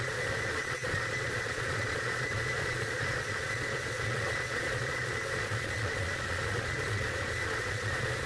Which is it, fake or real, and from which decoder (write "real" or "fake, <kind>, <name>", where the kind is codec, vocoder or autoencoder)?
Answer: fake, vocoder, Vocos